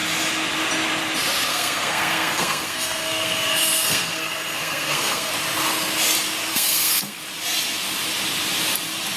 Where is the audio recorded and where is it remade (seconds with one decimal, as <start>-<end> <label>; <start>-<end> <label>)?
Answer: 0.0-1.5 recorded; 1.5-5.3 remade; 5.3-6.5 recorded; 6.5-7.2 remade; 7.2-9.2 recorded